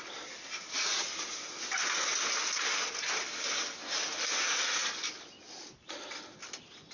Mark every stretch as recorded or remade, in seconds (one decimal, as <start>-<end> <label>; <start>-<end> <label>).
0.0-6.9 recorded